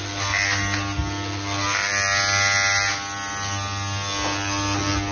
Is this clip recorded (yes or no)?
yes